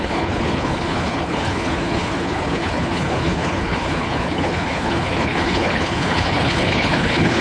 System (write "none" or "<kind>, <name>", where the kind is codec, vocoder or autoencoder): codec, HILCodec